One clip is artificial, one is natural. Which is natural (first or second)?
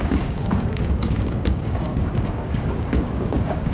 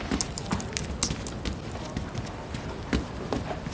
second